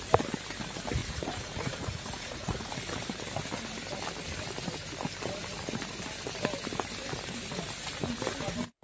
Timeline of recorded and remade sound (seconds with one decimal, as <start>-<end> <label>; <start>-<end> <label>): 0.0-1.0 recorded; 1.0-2.7 remade; 2.7-8.8 recorded